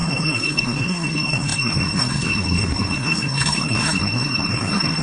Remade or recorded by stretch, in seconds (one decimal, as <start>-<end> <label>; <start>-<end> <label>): 0.0-5.0 remade